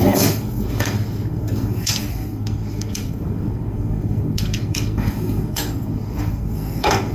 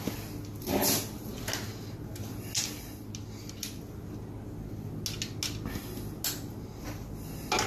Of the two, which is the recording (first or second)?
second